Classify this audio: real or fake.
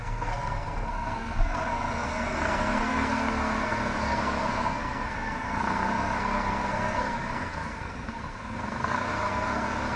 fake